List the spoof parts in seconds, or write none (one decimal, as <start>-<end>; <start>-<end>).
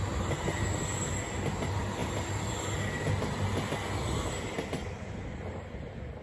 none